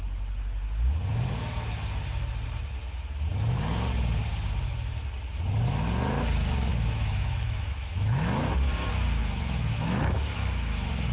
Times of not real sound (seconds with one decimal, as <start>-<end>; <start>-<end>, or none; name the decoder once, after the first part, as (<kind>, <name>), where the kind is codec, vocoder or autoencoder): 6.7-8.5 (autoencoder, DAC-VAE); 9.2-11.1